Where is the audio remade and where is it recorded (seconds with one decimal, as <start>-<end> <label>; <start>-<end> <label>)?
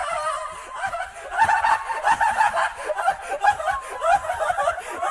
0.0-5.1 recorded